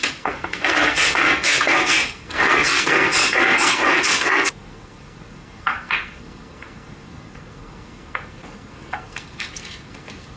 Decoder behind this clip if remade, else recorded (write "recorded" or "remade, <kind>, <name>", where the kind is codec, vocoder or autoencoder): remade, codec, SNAC